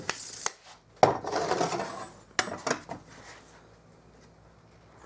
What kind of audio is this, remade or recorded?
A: recorded